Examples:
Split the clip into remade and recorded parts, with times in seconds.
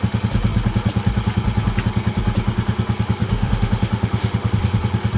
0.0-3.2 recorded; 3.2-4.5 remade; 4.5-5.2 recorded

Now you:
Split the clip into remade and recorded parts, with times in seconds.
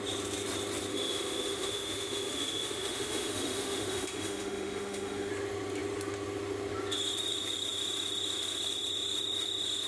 0.0-0.9 recorded; 0.9-5.3 remade; 5.3-9.9 recorded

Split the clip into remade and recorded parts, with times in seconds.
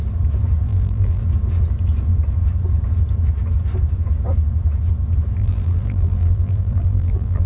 0.0-0.7 recorded; 0.7-1.2 remade; 1.2-5.4 recorded; 5.4-7.5 remade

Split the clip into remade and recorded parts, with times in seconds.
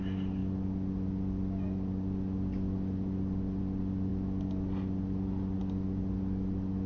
0.0-6.9 recorded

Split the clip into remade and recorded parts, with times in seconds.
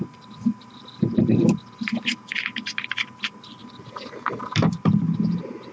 0.0-1.4 remade; 1.4-3.2 recorded; 3.2-3.6 remade; 3.6-4.5 recorded; 4.5-5.7 remade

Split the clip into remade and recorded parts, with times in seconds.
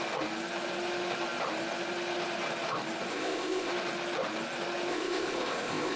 0.0-3.1 recorded; 3.1-3.7 remade; 3.7-4.9 recorded; 4.9-6.0 remade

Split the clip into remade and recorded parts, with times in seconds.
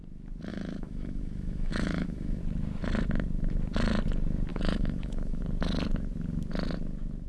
0.0-0.5 recorded; 0.5-2.4 remade; 2.4-4.5 recorded; 4.5-5.4 remade; 5.4-7.3 recorded